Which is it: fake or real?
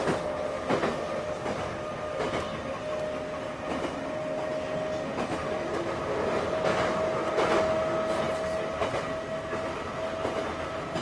real